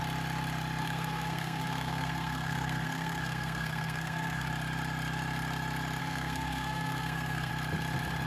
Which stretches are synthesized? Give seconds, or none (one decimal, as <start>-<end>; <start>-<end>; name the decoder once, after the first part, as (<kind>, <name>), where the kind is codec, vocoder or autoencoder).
0.8-4.5 (codec, SNAC); 6.0-7.5